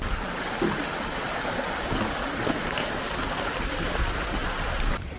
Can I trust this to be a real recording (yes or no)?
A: yes